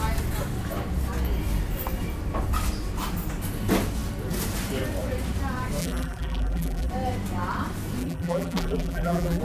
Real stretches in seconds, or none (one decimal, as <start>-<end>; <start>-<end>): 0.0-5.8; 6.9-8.0

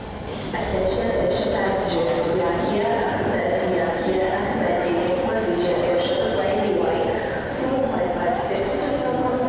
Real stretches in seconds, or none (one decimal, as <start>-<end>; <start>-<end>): 5.3-6.5; 8.7-9.5

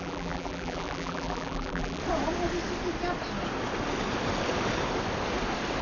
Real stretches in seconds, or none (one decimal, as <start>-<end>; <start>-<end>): 2.0-5.8

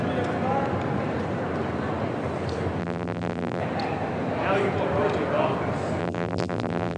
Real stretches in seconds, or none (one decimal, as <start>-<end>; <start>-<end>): 0.0-2.8; 3.6-6.0

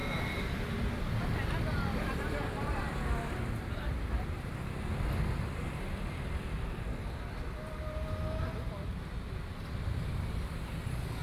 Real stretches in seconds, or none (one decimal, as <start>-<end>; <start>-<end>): 1.1-11.2

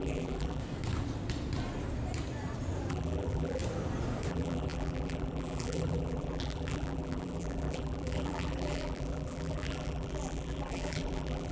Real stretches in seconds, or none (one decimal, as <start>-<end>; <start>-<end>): 0.6-2.9; 3.6-4.3

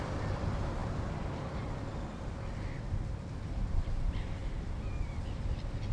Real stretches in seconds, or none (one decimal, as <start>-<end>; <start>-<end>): 0.8-3.6; 4.4-5.9

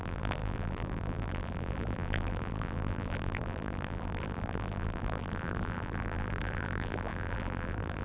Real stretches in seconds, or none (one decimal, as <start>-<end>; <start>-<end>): none